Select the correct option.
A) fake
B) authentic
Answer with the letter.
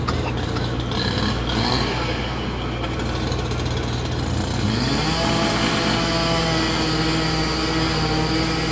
B